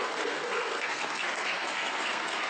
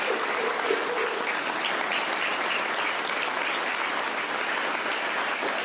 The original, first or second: second